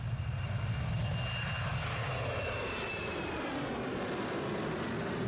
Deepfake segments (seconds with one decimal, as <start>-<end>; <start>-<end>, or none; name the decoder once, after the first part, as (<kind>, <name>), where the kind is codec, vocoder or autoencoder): none